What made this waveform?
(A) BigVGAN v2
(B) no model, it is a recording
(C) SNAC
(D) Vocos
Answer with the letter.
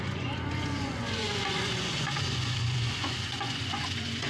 D